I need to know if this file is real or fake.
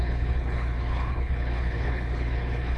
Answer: fake